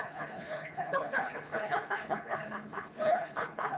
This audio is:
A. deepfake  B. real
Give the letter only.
A